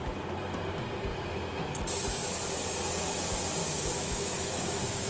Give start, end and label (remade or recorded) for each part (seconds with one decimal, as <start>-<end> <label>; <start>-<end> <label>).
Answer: 0.0-1.1 recorded; 1.1-1.8 remade; 1.8-3.6 recorded; 3.6-5.1 remade